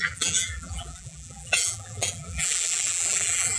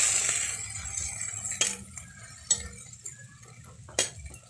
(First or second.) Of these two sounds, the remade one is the first